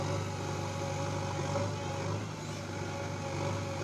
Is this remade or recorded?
recorded